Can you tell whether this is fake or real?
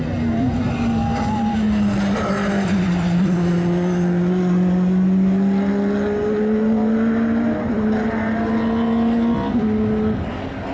real